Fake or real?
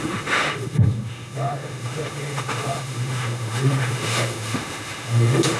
fake